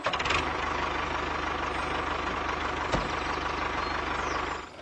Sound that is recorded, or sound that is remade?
recorded